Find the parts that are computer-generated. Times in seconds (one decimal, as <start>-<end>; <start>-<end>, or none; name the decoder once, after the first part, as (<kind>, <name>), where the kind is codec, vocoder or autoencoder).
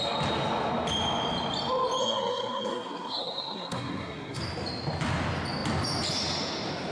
2.0-4.4 (codec, SNAC)